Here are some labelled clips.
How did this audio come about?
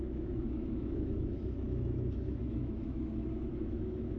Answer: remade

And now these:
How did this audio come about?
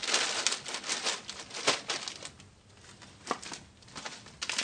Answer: recorded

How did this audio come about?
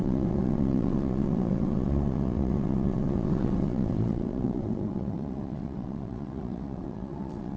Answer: remade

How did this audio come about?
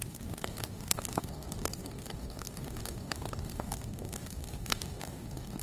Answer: remade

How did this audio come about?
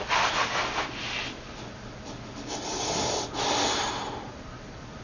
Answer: recorded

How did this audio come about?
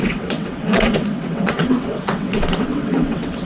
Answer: remade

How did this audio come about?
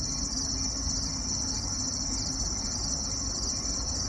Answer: recorded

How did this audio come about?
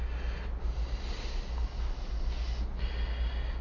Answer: recorded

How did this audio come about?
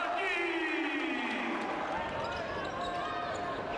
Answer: recorded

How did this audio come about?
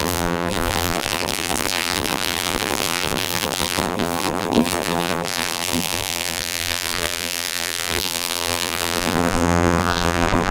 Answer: remade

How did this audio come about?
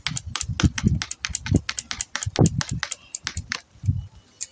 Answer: recorded